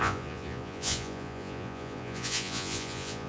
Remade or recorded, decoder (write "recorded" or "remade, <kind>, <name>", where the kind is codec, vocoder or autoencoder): remade, vocoder, Vocos